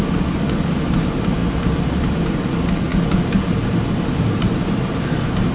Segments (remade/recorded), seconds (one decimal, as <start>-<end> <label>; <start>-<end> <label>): 0.0-1.4 recorded; 1.4-2.1 remade; 2.1-2.9 recorded; 2.9-5.5 remade